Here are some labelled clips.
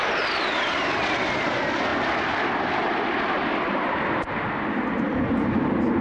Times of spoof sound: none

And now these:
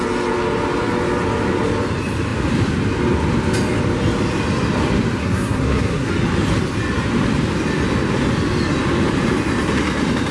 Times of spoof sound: 5.2-6.1

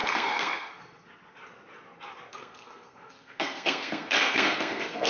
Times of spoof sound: 0.0-0.8; 2.3-5.1

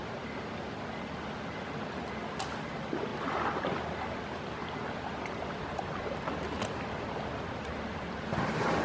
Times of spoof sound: none

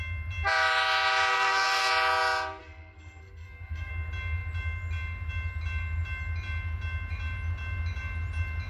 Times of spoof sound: 1.3-1.9; 2.6-3.9

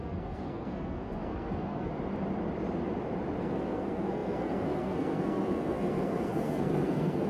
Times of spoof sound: 0.0-1.9; 3.4-7.3

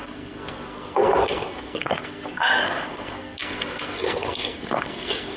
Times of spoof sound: 0.0-5.4

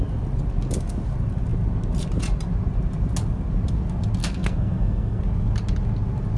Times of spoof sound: 4.2-5.2